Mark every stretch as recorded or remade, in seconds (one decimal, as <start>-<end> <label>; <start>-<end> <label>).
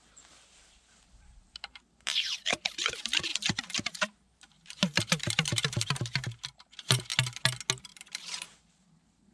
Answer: 0.0-3.3 remade; 3.3-3.9 recorded; 3.9-7.1 remade; 7.1-7.8 recorded; 7.8-9.3 remade